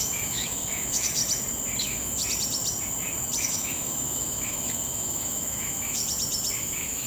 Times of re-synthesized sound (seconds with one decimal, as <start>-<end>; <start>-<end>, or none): 0.0-1.2; 1.8-2.2; 3.4-6.0; 6.6-7.1